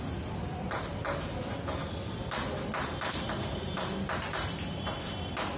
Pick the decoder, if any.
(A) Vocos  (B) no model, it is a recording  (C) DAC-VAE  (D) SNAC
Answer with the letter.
B